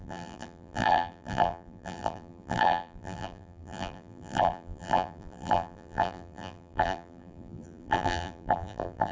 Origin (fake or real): fake